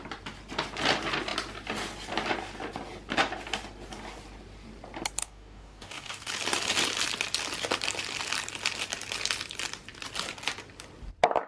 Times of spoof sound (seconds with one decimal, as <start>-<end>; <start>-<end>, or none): 5.2-6.3